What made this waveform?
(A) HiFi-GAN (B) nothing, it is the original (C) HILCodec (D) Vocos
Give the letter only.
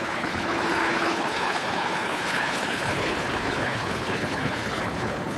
C